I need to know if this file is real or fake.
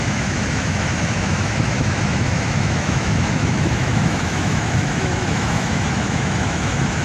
fake